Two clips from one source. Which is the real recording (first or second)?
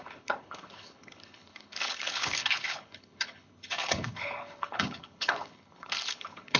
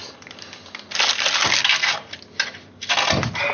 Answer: second